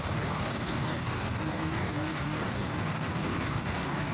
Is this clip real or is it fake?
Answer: fake